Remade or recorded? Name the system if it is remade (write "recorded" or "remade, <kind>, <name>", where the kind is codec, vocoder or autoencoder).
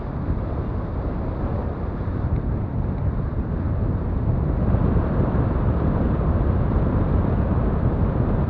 recorded